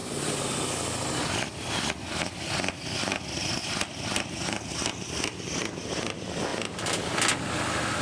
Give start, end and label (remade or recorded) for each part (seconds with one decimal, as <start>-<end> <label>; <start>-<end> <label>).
0.0-3.6 recorded; 3.6-4.7 remade; 4.7-8.0 recorded